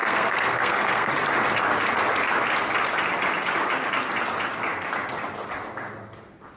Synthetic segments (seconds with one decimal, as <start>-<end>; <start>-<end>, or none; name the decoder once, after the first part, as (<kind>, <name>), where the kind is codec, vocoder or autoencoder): 0.0-1.1 (codec, SNAC)